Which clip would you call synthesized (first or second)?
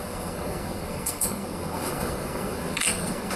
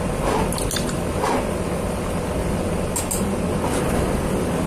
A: first